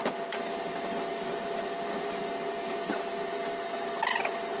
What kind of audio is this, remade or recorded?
recorded